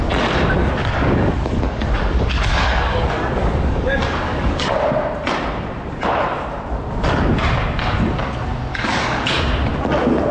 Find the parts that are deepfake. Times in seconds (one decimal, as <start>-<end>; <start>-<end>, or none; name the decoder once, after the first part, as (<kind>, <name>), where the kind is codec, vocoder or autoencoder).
0.6-4.8 (codec, DAC); 8.7-9.4